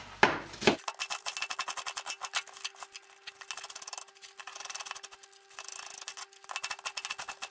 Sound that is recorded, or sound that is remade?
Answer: recorded